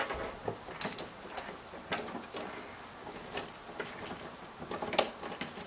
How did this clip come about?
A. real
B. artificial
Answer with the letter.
A